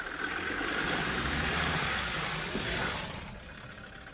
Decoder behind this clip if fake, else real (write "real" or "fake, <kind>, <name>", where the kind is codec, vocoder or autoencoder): fake, vocoder, BigVGAN v2